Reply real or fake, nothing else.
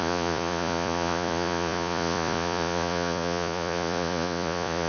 fake